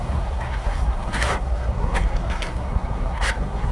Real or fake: fake